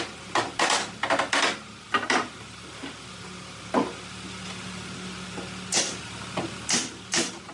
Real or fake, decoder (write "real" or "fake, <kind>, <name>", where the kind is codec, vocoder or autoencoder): real